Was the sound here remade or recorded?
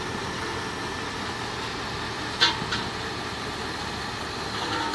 recorded